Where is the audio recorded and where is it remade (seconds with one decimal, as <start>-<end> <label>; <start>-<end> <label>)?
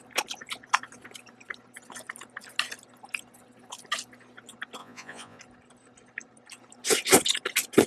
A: 0.0-4.8 recorded; 4.8-5.4 remade; 5.4-7.9 recorded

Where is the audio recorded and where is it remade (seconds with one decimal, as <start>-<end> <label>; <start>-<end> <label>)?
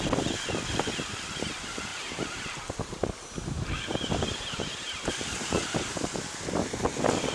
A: 0.0-1.9 recorded; 1.9-6.3 remade; 6.3-7.3 recorded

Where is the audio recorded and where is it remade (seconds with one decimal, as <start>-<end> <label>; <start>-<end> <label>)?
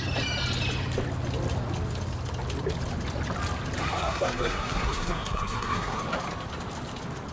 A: 0.0-3.8 recorded; 3.8-6.0 remade; 6.0-7.3 recorded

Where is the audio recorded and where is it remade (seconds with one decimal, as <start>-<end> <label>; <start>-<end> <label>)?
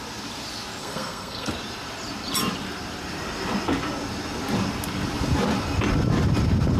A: 0.0-0.8 recorded; 0.8-1.5 remade; 1.5-6.8 recorded